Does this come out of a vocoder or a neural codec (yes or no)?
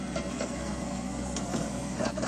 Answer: yes